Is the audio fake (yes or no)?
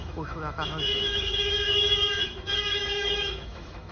yes